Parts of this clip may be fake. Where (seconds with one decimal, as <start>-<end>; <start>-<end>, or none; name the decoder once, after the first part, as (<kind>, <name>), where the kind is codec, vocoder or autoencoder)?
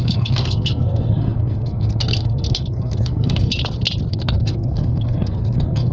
0.0-3.5 (codec, SNAC); 4.1-5.9